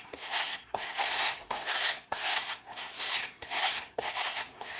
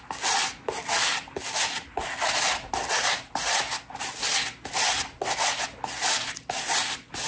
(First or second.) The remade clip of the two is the first